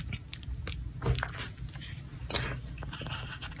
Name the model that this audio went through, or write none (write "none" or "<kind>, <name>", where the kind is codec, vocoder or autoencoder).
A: none